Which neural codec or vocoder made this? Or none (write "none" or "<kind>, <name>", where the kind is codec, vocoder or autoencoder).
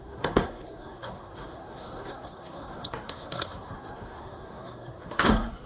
codec, SNAC